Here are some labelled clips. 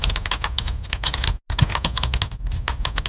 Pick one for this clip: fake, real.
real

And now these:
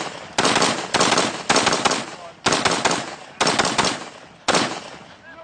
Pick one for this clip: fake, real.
real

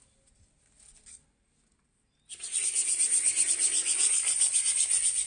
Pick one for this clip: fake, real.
real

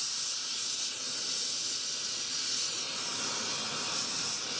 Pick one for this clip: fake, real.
real